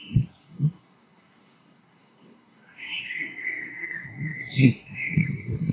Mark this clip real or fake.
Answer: fake